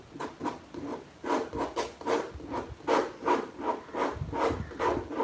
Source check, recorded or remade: recorded